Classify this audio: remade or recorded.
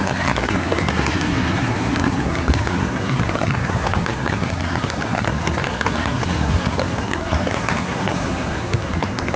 remade